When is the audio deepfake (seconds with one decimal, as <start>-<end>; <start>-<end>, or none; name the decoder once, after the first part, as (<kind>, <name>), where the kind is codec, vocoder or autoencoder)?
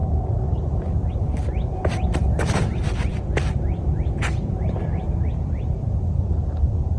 1.1-3.1 (vocoder, BigVGAN v2); 5.3-7.0